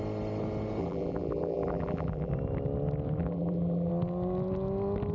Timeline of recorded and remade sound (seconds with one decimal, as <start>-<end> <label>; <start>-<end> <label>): 0.0-0.8 recorded; 0.8-2.3 remade; 2.3-3.2 recorded; 3.2-3.9 remade; 3.9-5.1 recorded